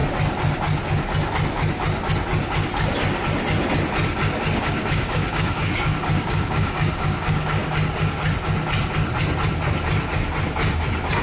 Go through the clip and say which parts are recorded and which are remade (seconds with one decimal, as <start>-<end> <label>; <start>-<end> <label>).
0.0-4.6 recorded; 4.6-7.6 remade; 7.6-11.2 recorded